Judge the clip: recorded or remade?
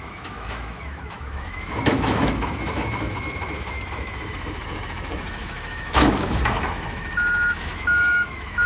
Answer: remade